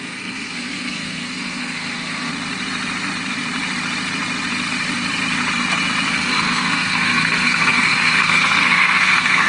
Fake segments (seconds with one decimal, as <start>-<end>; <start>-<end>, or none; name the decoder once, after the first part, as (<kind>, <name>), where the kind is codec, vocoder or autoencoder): 0.0-2.3 (codec, SNAC); 6.1-9.5